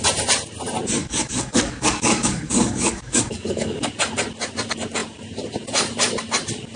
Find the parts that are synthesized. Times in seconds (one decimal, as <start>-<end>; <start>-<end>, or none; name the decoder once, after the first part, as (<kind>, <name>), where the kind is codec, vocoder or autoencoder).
1.0-3.9 (codec, DAC)